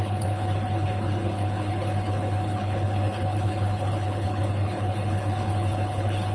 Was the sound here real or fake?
fake